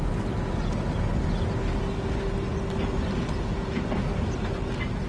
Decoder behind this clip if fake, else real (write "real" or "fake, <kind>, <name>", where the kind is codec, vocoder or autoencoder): real